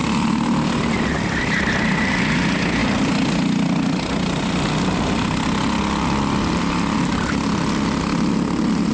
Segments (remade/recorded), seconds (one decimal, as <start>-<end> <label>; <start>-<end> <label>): 0.0-8.9 recorded

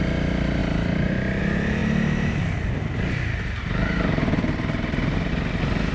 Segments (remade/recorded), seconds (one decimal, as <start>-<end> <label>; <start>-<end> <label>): 0.0-5.9 recorded

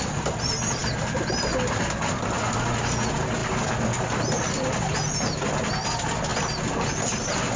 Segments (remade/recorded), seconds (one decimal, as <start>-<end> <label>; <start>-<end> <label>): 0.0-7.6 recorded

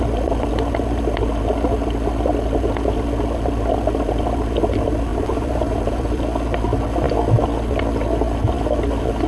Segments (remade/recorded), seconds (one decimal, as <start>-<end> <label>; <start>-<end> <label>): 0.0-5.1 recorded; 5.1-6.2 remade; 6.2-9.3 recorded

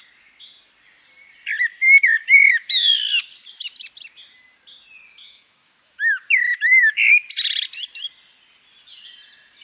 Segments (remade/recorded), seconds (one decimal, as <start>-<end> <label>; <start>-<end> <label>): 0.0-2.2 recorded; 2.2-3.3 remade; 3.3-5.2 recorded; 5.2-7.3 remade; 7.3-9.6 recorded

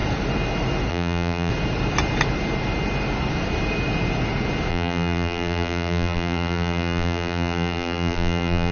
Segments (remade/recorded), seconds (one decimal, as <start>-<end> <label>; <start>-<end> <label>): 0.0-0.9 recorded; 0.9-1.5 remade; 1.5-4.7 recorded; 4.7-8.7 remade

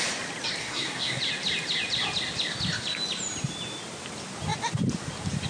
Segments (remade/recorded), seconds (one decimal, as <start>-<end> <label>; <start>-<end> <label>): 0.0-0.6 recorded; 0.6-1.2 remade; 1.2-5.5 recorded

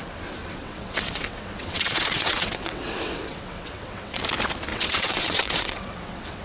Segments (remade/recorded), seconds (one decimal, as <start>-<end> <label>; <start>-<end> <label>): 0.0-0.4 recorded; 0.4-4.2 remade; 4.2-4.7 recorded; 4.7-6.4 remade